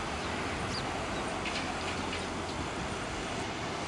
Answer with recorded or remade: recorded